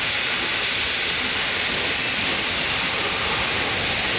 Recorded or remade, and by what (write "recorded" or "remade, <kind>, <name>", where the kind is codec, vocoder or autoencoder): recorded